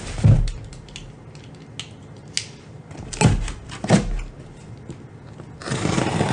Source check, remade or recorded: recorded